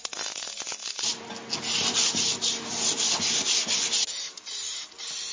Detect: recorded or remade recorded